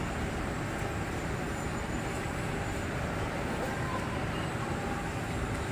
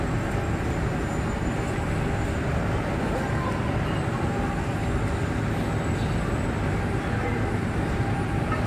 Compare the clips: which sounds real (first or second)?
second